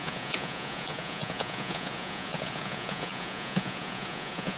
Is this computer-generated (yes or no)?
yes